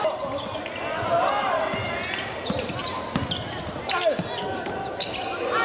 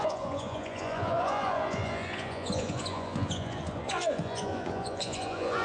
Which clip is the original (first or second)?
first